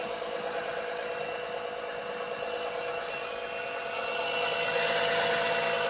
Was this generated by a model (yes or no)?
no